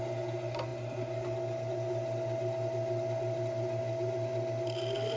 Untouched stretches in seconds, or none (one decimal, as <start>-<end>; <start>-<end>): 0.0-5.2